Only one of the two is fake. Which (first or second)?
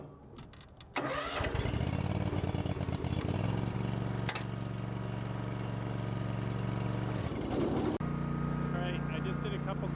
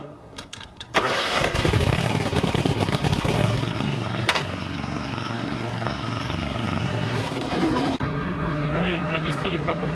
second